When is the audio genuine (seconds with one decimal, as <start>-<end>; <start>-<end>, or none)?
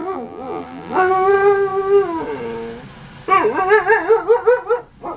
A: 1.1-5.2